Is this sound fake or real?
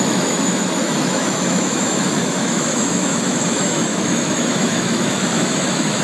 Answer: fake